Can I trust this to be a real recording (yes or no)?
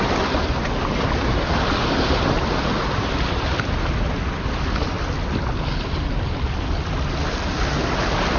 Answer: yes